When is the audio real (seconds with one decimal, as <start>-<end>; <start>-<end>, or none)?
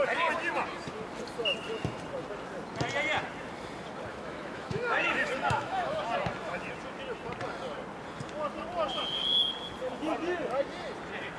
0.0-4.1; 6.0-11.4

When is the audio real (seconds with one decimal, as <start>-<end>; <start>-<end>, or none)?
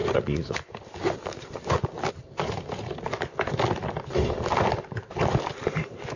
0.0-6.2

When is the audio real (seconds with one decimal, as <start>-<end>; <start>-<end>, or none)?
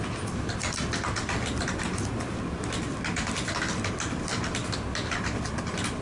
0.0-6.0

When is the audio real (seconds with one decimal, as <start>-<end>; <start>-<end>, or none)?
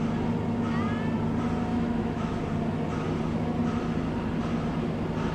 0.0-1.7; 2.4-5.3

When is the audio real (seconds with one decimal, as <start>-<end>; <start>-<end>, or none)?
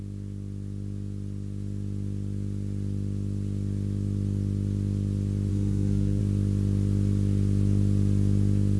0.0-5.5; 6.2-8.8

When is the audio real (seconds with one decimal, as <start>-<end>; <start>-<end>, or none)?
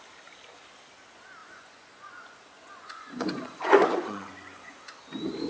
0.0-1.4; 4.7-5.5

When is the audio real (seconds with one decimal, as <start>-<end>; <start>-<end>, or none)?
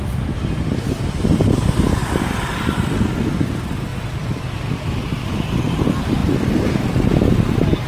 0.0-2.0; 2.6-3.9; 4.7-7.9